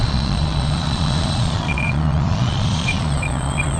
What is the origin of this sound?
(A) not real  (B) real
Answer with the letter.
A